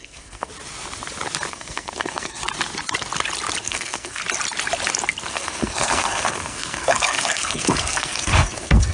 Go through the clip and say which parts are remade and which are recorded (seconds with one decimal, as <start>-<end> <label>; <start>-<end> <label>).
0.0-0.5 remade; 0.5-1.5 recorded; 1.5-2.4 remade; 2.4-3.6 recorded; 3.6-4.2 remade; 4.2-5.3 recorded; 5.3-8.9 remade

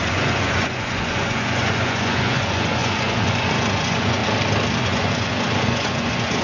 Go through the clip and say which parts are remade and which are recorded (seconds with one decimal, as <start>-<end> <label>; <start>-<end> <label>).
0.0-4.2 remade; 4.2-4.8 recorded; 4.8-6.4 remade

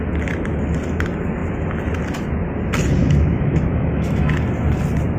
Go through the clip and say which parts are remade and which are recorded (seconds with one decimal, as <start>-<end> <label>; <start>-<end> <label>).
0.0-3.0 recorded; 3.0-4.2 remade; 4.2-5.2 recorded

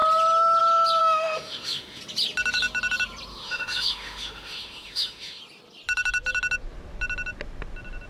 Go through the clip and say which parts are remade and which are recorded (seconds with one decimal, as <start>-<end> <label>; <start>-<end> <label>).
0.0-1.0 recorded; 1.0-2.0 remade; 2.0-3.3 recorded; 3.3-5.4 remade; 5.4-8.1 recorded

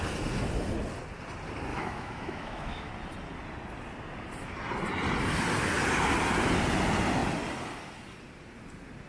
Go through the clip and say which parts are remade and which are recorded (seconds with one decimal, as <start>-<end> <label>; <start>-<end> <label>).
0.0-1.7 recorded; 1.7-2.9 remade; 2.9-9.1 recorded